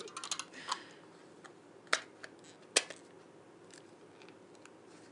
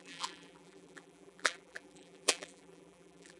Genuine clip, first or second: first